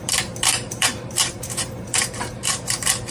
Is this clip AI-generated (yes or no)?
yes